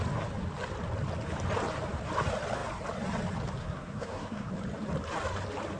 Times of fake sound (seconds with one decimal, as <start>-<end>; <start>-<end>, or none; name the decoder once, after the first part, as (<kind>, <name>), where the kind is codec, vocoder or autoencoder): 3.6-4.5 (codec, SNAC)